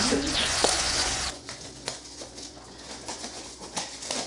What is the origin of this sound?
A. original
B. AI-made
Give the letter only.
B